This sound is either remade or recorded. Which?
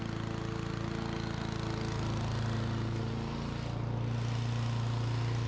recorded